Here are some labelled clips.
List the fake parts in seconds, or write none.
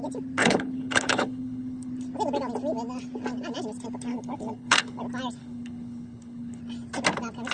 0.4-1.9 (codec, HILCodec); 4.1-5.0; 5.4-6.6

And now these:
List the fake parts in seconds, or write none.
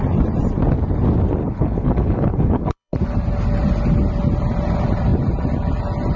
1.4-3.0 (codec, HILCodec)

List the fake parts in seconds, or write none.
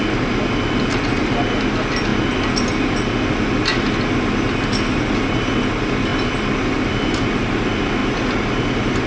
none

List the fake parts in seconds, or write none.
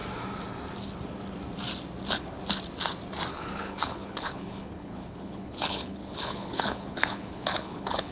3.3-8.1 (codec, HILCodec)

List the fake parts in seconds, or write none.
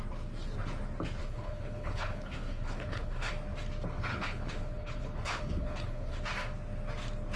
1.2-3.3 (codec, HILCodec); 4.1-6.2